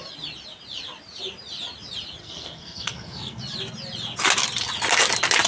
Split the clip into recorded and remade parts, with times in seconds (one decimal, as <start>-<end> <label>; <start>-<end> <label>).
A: 0.0-2.2 recorded; 2.2-3.4 remade; 3.4-5.5 recorded